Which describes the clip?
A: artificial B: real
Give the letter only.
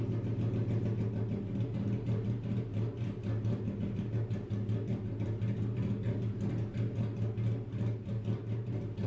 B